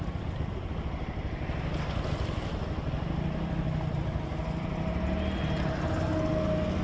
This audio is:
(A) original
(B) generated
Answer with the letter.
A